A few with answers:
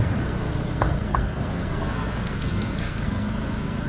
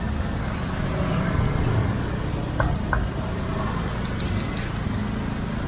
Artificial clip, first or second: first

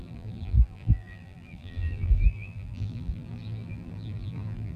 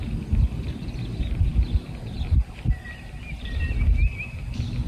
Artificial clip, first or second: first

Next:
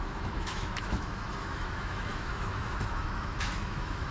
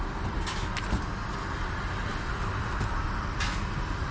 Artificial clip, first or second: first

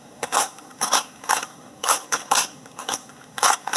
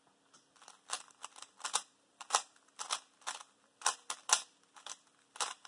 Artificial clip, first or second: first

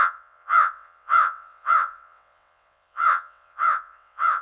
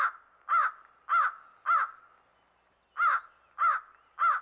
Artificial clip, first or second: first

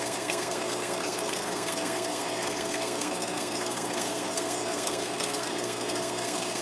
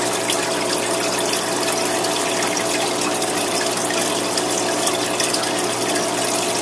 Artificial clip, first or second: first